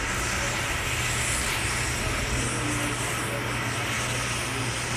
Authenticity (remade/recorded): recorded